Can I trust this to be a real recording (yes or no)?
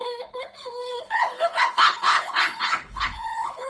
no